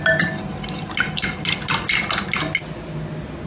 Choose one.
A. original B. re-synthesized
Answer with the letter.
A